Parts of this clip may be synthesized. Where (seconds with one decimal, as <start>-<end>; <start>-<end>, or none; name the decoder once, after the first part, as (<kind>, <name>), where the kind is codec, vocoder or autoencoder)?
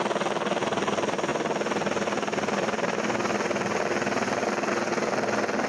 none